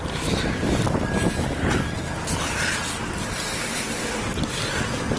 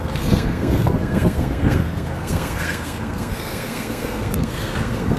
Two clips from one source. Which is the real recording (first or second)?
first